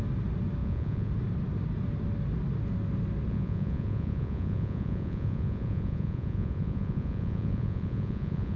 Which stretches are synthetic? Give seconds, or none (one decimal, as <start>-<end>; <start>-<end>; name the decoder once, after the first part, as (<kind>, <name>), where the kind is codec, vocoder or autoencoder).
0.6-1.1 (vocoder, Vocos); 3.3-8.6